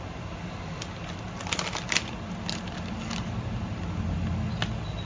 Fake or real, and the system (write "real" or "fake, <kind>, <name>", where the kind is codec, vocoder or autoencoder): real